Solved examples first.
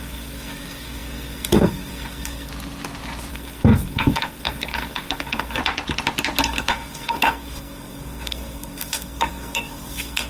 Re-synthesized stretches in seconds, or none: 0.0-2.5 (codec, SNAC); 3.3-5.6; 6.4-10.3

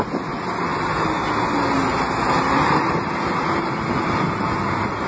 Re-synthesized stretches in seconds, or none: none

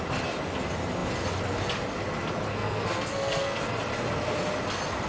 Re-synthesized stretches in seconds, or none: 2.5-3.6 (codec, SNAC)

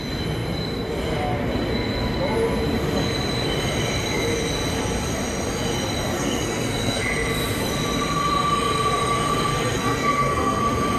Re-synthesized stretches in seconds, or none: 6.1-7.0 (codec, SNAC); 9.5-10.6

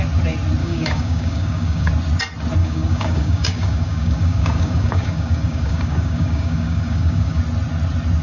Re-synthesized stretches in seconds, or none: 0.6-1.9 (codec, DAC); 2.6-7.4

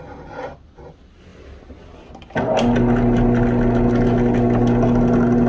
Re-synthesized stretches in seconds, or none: none